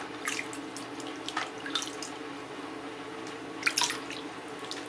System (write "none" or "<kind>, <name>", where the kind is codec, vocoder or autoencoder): none